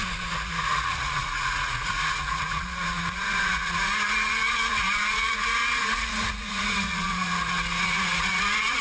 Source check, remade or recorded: remade